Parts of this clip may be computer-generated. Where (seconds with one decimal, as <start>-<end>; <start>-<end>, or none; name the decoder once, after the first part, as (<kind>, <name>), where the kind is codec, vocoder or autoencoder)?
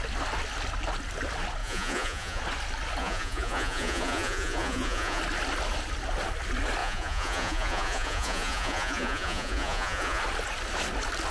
1.6-2.4 (vocoder, Vocos); 3.0-5.2; 6.8-10.2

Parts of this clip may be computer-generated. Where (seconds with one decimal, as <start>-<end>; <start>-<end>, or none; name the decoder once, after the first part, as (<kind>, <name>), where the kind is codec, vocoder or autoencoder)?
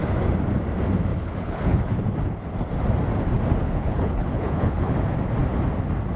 1.1-2.0 (codec, HILCodec); 3.6-4.9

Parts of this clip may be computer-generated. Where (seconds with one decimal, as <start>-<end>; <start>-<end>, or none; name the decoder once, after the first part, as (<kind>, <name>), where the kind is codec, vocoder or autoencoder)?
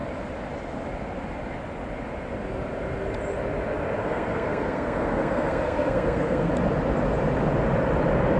4.0-6.5 (codec, SNAC)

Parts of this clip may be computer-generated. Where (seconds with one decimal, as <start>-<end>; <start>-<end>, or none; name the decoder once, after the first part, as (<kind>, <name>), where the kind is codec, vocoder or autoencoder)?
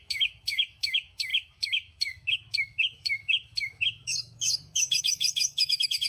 0.0-6.1 (codec, DAC)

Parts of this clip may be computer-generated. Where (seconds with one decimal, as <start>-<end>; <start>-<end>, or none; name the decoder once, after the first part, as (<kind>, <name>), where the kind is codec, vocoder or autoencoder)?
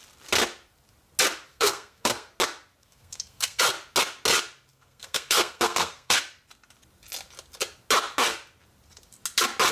1.5-2.3 (codec, SNAC); 2.8-3.6; 4.7-6.2